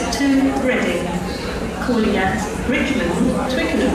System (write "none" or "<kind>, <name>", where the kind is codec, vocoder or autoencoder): none